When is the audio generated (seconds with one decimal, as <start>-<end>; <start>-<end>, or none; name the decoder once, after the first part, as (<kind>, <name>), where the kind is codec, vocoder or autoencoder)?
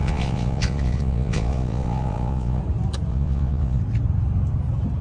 0.0-2.6 (vocoder, Vocos); 3.1-3.8